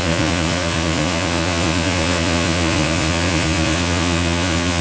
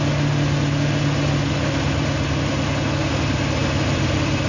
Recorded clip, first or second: second